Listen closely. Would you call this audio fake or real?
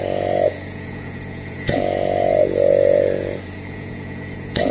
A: fake